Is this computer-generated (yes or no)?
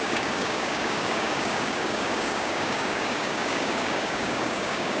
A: yes